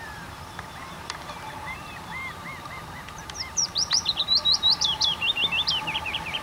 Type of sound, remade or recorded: remade